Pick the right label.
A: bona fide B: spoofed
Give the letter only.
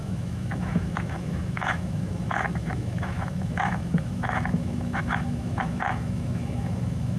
B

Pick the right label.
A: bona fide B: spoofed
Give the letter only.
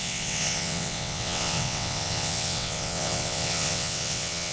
B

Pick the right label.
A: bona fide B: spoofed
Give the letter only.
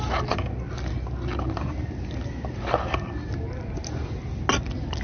A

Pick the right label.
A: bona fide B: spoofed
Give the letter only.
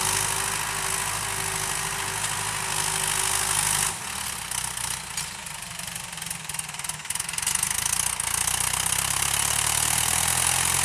A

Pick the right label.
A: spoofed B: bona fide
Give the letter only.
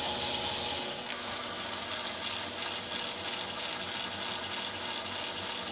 B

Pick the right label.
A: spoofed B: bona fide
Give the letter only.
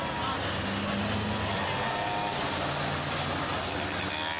B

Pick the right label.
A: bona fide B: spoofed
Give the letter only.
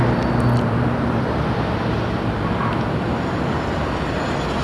B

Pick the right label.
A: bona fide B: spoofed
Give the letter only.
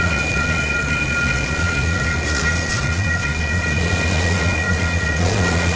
B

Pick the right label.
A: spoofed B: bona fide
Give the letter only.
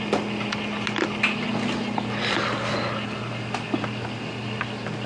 B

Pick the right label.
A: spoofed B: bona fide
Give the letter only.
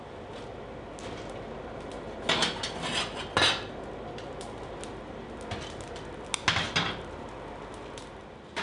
B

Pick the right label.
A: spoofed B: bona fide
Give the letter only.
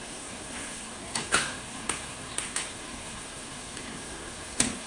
A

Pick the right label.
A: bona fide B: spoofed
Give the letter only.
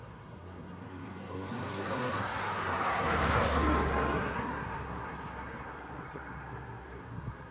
B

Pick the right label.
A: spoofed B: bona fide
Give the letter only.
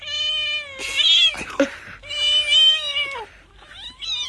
B